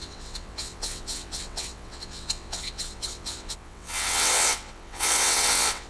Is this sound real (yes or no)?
no